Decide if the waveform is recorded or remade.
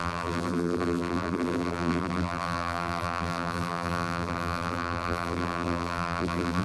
remade